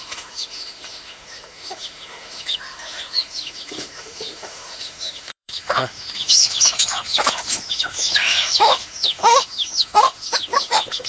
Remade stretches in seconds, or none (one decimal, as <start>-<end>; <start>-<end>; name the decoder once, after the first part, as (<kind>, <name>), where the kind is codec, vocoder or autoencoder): 0.0-11.1 (autoencoder, DAC-VAE)